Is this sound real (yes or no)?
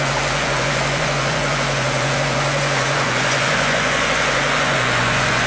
no